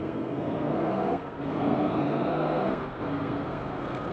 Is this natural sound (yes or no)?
no